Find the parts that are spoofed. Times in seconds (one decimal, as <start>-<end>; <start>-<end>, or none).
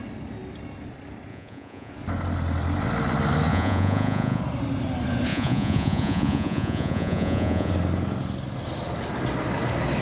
1.3-1.9; 3.5-4.4; 5.3-7.7